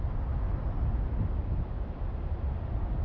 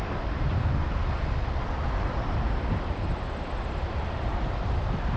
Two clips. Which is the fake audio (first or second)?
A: second